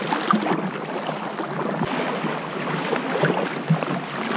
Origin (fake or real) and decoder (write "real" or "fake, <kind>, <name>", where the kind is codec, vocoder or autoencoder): real